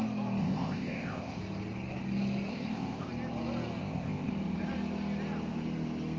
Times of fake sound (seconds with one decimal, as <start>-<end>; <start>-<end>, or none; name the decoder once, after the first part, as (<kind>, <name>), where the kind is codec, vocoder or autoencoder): 0.4-1.4 (codec, ZipCodec); 2.5-3.1; 3.8-4.3